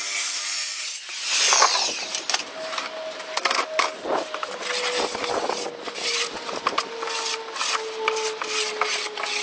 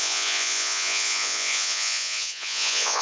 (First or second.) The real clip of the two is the first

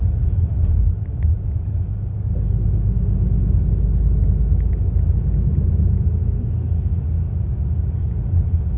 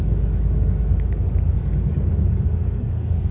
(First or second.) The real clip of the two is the first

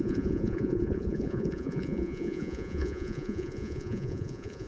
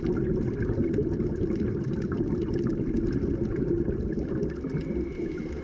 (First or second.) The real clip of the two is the second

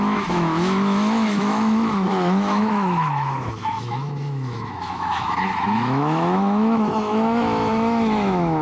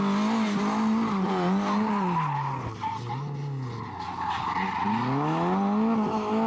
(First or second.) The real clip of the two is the second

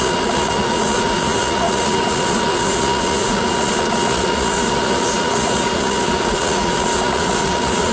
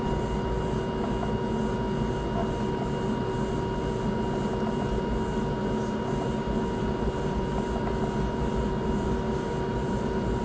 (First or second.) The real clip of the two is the second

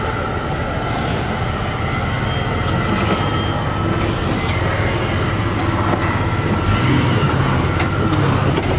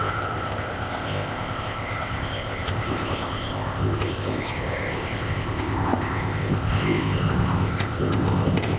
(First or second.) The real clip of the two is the first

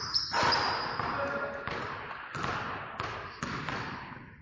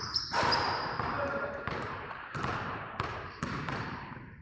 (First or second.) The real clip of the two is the first